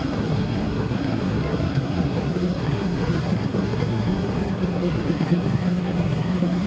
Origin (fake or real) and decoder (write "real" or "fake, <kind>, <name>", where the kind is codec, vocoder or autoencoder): fake, codec, SNAC